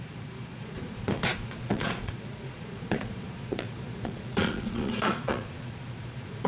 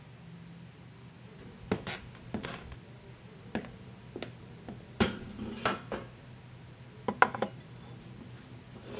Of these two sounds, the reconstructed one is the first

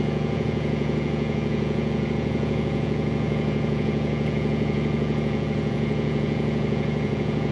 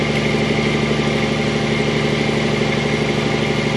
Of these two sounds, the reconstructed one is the first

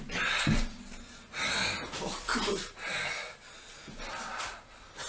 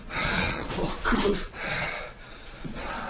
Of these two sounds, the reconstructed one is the second